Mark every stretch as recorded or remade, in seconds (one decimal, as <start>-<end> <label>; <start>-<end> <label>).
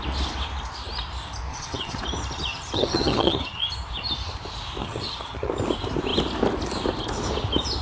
0.0-1.5 recorded; 1.5-2.0 remade; 2.0-2.5 recorded; 2.5-3.7 remade; 3.7-4.8 recorded; 4.8-5.5 remade; 5.5-7.8 recorded